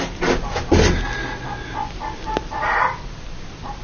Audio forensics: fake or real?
real